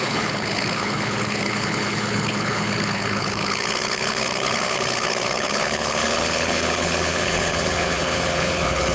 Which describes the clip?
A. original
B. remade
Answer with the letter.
B